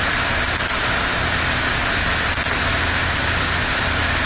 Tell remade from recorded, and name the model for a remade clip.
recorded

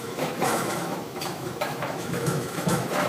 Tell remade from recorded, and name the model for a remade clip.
remade, autoencoder, DAC-VAE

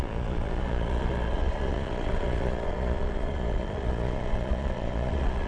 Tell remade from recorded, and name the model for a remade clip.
remade, vocoder, Vocos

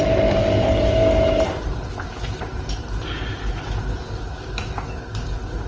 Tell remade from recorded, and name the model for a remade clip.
recorded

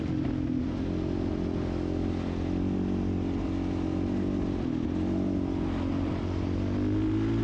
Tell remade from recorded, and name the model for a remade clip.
recorded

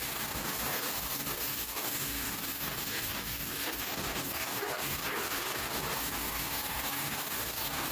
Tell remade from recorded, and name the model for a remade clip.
remade, codec, DAC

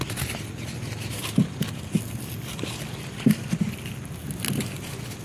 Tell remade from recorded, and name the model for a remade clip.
recorded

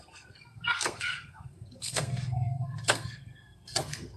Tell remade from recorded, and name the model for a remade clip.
remade, codec, SNAC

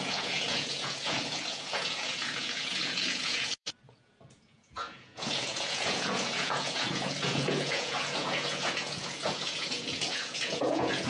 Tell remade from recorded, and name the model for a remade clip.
remade, vocoder, Vocos